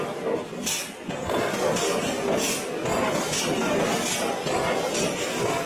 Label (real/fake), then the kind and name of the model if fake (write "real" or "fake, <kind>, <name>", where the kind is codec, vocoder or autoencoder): real